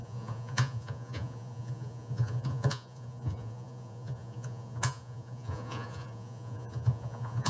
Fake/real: fake